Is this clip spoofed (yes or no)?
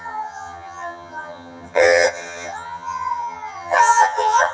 yes